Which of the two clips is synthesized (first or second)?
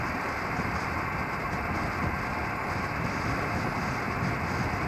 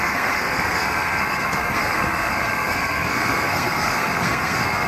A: second